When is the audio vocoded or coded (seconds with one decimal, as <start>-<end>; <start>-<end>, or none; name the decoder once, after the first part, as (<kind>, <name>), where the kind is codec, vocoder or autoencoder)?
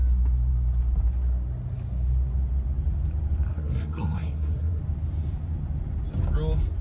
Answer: 3.5-4.8 (codec, SNAC)